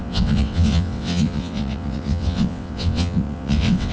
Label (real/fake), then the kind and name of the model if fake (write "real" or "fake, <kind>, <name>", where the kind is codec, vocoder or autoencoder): fake, vocoder, WaveNeXt